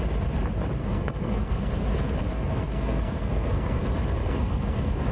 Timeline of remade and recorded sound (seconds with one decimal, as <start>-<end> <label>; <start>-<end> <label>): 0.0-0.8 recorded; 0.8-3.8 remade; 3.8-4.2 recorded; 4.2-5.1 remade